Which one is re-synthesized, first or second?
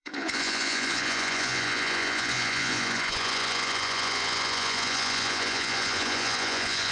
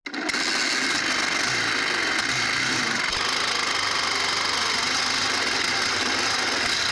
first